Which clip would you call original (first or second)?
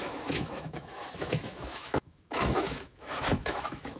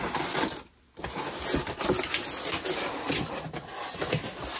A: second